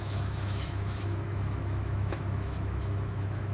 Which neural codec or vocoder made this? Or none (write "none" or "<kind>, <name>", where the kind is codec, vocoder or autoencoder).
autoencoder, DAC-VAE